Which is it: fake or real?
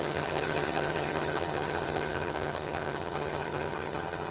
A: fake